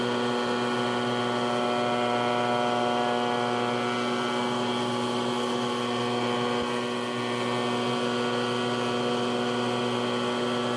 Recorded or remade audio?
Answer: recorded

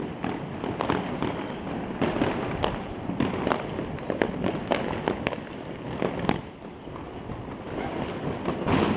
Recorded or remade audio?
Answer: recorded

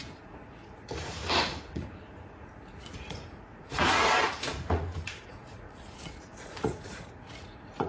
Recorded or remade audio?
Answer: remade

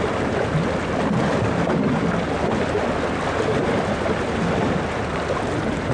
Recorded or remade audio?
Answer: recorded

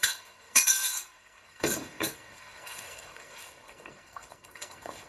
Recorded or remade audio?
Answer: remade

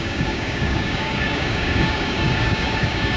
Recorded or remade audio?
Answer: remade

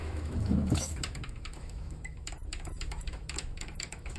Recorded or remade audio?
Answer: remade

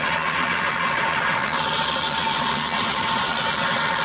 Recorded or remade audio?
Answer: remade